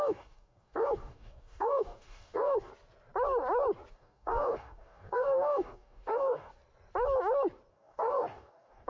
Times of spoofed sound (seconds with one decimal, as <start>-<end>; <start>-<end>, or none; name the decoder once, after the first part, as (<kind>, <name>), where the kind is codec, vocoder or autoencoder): 0.0-2.7 (codec, DAC); 3.9-6.6; 7.7-8.9